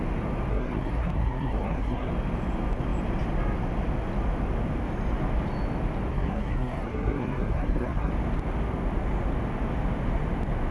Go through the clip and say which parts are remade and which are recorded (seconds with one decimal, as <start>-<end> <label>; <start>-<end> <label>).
0.0-0.5 recorded; 0.5-2.1 remade; 2.1-6.1 recorded; 6.1-8.1 remade; 8.1-10.7 recorded